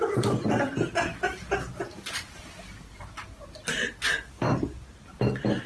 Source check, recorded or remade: recorded